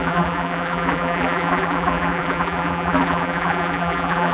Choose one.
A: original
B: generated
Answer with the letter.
B